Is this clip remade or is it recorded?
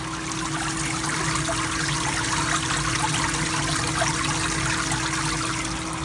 recorded